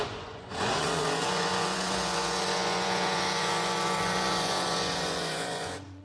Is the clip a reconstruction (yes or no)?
yes